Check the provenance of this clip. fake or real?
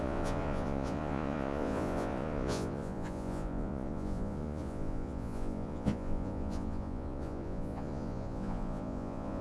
fake